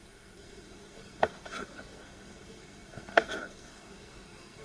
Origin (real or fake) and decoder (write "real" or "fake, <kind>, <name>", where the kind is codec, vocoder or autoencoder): fake, codec, SNAC